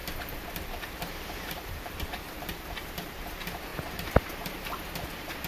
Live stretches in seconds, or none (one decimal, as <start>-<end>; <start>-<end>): 0.0-0.6